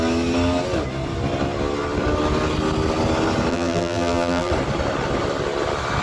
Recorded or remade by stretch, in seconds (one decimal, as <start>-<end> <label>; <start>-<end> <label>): 0.0-3.5 recorded; 3.5-4.5 remade; 4.5-6.0 recorded